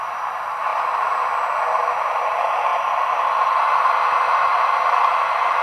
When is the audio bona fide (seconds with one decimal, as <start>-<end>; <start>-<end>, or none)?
0.0-2.7; 4.0-5.6